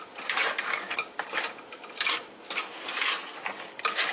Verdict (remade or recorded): recorded